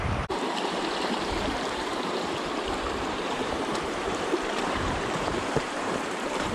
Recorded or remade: remade